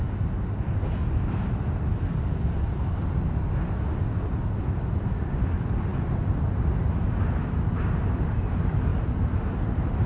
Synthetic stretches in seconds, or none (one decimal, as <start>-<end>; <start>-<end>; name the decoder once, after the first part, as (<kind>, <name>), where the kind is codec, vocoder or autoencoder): none